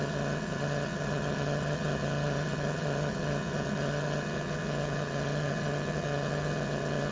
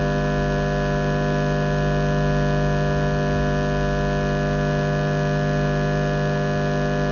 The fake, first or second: first